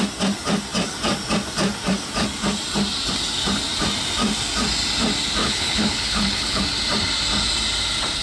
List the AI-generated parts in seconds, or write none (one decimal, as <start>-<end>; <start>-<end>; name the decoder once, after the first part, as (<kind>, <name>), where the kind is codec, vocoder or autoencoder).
5.4-6.6 (codec, HILCodec)